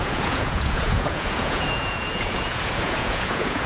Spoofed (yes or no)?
yes